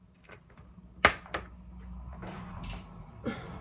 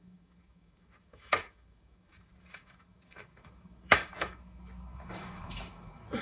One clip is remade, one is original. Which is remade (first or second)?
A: second